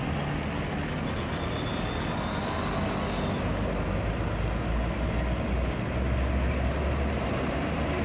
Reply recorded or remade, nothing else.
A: recorded